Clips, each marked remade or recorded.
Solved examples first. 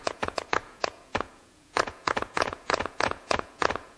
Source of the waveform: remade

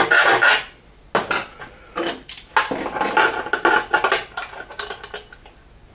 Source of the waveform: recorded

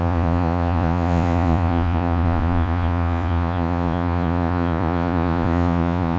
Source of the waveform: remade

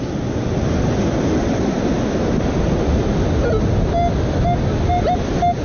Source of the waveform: recorded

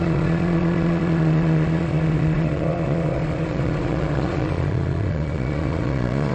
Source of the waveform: remade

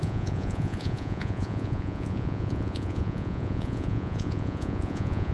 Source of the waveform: remade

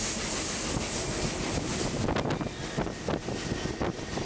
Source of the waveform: recorded